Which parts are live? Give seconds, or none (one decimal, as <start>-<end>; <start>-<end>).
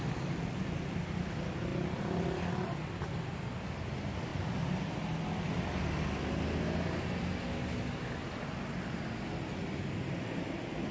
0.0-10.9